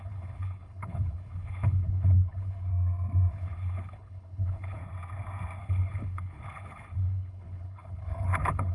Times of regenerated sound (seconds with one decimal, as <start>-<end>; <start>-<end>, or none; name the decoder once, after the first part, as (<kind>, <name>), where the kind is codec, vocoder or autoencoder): 0.0-2.7 (codec, HILCodec); 3.3-4.8; 5.6-8.7